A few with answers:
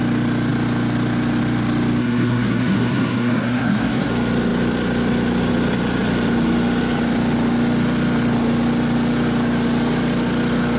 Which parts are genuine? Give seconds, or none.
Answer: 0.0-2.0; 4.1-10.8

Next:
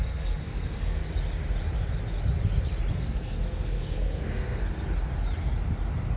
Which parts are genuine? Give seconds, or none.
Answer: 1.0-2.9; 4.6-6.2

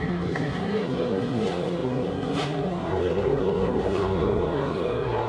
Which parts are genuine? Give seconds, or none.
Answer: none

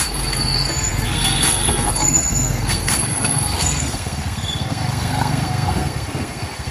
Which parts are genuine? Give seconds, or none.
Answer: none